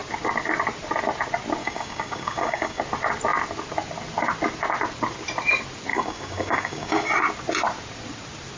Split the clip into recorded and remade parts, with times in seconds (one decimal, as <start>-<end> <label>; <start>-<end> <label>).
0.0-1.6 recorded; 1.6-2.8 remade; 2.8-5.9 recorded; 5.9-7.1 remade; 7.1-8.6 recorded